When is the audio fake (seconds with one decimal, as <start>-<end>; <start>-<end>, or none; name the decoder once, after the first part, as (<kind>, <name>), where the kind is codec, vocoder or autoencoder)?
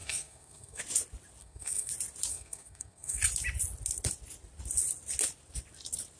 0.0-0.8 (codec, SNAC); 1.4-1.9; 2.3-3.2